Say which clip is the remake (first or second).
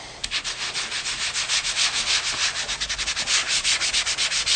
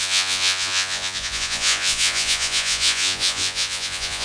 second